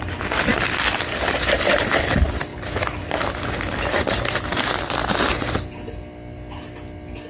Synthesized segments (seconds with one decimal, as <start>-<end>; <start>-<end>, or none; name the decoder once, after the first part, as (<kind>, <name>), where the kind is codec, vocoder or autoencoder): none